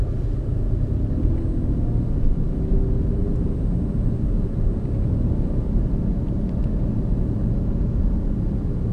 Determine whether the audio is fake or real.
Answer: real